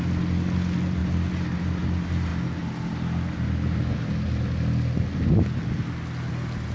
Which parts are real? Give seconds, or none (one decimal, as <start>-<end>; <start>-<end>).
0.0-6.7